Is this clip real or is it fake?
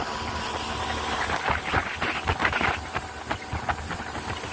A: real